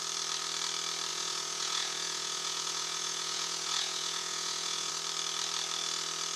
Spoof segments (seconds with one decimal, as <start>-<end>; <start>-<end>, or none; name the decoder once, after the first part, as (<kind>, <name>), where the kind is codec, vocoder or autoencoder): 1.1-4.9 (vocoder, Vocos)